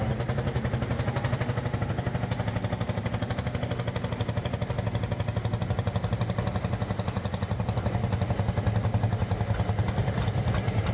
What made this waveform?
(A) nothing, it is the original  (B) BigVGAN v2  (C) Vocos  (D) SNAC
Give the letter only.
A